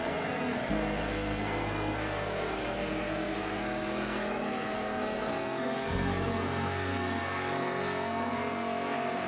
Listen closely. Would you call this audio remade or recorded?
remade